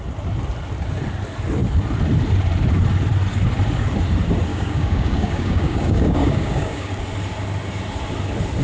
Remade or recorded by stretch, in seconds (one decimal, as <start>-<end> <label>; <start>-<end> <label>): 0.0-4.5 recorded; 4.5-7.0 remade; 7.0-8.6 recorded

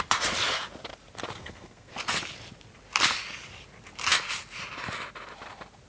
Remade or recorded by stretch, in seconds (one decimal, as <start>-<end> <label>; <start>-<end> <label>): 0.0-1.4 recorded; 1.4-1.9 remade; 1.9-5.9 recorded